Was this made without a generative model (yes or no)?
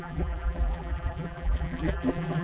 no